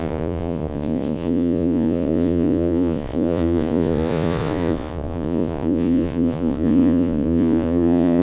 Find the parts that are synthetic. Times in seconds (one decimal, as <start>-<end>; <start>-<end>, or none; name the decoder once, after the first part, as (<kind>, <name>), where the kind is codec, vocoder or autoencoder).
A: 0.0-8.2 (vocoder, Vocos)